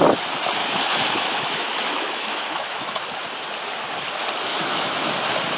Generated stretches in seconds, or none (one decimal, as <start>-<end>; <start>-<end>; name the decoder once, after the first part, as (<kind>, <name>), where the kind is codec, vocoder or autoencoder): 0.6-3.0 (autoencoder, DAC-VAE); 4.5-5.1